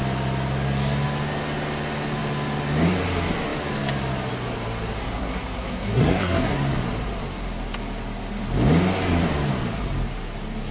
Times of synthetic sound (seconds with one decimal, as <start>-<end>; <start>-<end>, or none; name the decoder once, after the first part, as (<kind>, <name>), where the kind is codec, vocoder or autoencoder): 5.0-6.6 (codec, SNAC)